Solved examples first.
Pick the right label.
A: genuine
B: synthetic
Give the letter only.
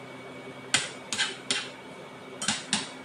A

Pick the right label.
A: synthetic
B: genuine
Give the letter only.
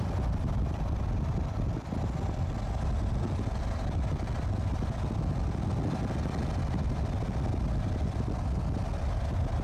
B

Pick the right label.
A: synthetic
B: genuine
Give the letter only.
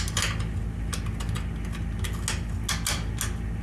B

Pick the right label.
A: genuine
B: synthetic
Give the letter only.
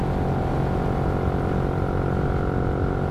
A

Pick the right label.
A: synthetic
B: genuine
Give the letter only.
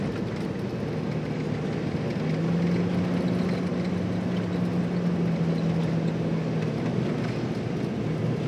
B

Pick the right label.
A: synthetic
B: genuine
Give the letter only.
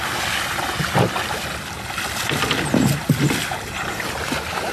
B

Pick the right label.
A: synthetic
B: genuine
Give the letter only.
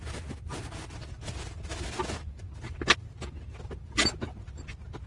B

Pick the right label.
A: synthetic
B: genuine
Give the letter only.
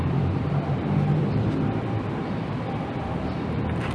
A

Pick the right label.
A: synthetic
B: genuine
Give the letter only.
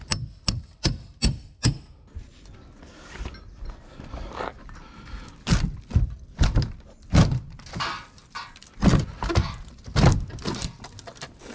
B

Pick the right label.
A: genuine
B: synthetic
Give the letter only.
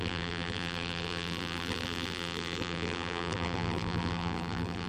B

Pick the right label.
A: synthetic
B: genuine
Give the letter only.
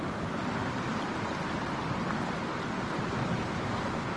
B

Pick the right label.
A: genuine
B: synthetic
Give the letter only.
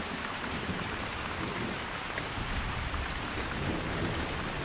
B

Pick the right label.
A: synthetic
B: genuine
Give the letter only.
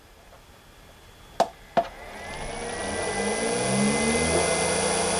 B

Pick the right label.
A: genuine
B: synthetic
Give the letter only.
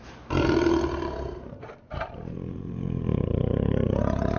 B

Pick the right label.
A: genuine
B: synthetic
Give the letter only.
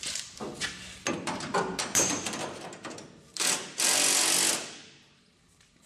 A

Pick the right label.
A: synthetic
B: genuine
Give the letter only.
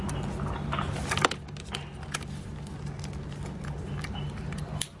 B